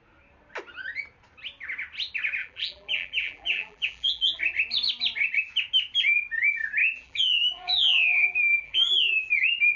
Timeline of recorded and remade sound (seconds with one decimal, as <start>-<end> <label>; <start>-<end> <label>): 0.0-2.4 recorded; 2.4-4.4 remade; 4.4-6.8 recorded; 6.8-9.3 remade; 9.3-9.8 recorded